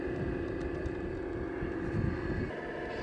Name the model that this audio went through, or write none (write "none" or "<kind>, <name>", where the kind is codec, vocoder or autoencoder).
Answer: none